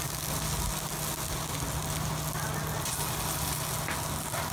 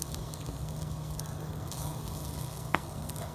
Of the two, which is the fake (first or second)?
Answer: second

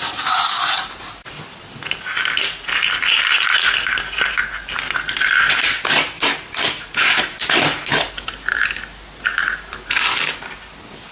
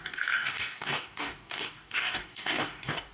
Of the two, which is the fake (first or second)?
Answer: second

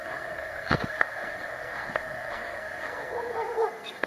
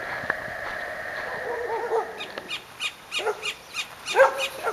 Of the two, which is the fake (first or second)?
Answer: first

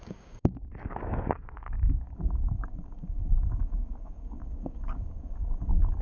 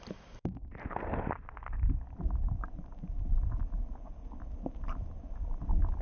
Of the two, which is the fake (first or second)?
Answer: first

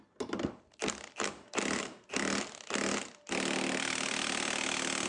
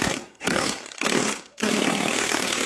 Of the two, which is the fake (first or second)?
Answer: second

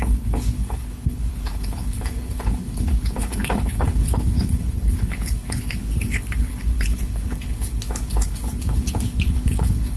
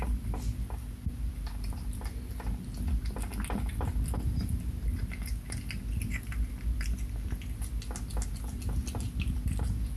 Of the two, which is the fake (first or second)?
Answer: first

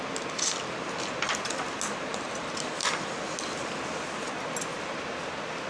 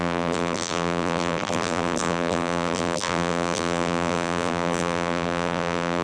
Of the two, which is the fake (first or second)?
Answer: second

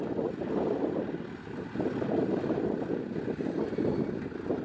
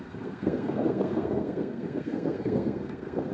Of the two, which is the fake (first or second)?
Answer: second